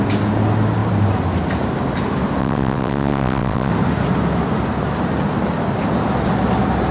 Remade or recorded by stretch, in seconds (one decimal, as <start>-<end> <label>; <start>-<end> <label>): 0.0-2.4 recorded; 2.4-3.7 remade; 3.7-6.9 recorded